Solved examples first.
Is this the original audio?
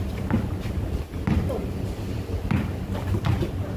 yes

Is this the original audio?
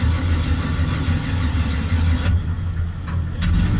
yes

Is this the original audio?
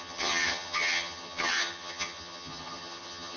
no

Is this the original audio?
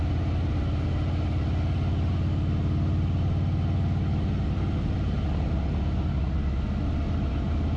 yes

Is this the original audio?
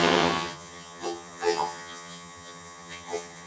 no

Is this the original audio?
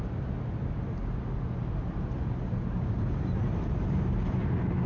yes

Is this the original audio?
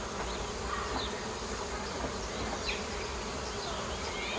yes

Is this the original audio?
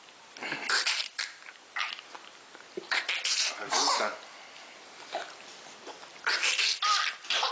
no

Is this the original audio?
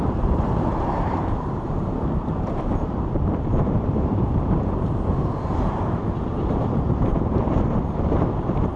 no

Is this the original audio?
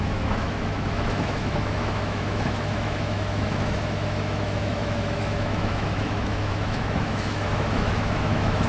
no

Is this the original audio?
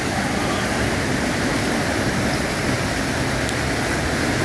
yes